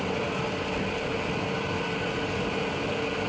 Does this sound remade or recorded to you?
recorded